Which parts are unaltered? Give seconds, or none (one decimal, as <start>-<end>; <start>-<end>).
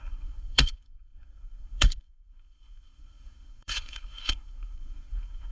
none